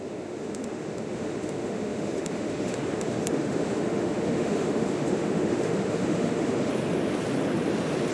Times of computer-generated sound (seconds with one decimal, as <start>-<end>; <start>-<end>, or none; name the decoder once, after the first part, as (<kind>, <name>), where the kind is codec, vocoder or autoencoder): 0.0-6.7 (autoencoder, DAC-VAE)